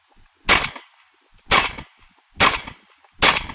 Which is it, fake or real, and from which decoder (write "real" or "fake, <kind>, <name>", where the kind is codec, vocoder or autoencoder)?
real